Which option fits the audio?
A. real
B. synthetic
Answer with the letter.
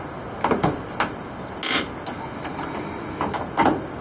A